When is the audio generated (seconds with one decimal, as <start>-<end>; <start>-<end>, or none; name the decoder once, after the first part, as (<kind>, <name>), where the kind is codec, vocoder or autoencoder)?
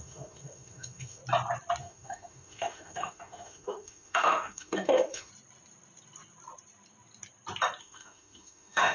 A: 0.0-1.2 (autoencoder, DAC-VAE); 1.8-5.3; 7.8-8.9